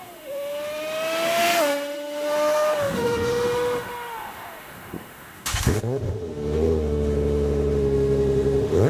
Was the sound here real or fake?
fake